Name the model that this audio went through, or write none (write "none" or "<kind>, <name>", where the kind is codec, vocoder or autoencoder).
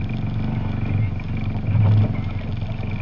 none